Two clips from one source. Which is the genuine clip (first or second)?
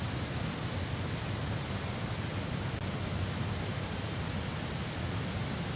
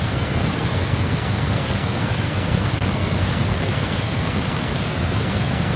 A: first